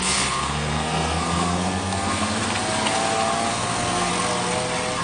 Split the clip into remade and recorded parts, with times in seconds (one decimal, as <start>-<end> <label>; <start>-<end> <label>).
0.0-2.4 remade; 2.4-3.5 recorded; 3.5-4.1 remade; 4.1-5.0 recorded